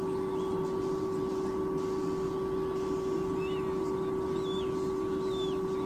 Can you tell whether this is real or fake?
real